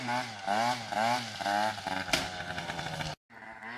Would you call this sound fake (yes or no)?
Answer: no